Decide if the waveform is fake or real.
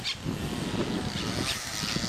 real